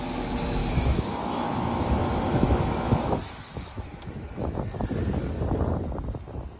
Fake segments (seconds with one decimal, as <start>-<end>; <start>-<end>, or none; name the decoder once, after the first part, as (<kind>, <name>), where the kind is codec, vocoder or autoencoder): 0.6-4.6 (autoencoder, DAC-VAE)